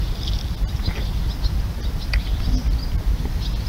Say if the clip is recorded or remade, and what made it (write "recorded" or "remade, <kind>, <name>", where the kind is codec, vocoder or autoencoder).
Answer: recorded